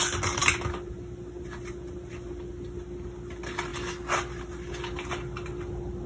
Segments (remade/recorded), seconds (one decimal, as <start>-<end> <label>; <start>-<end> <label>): 0.0-6.1 recorded